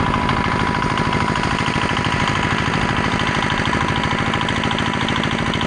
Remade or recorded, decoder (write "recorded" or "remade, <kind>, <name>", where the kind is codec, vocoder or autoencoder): recorded